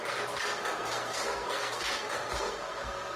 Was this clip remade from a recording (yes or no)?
yes